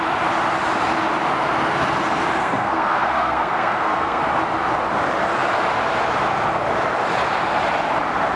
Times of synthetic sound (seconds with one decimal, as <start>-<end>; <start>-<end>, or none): 2.4-4.2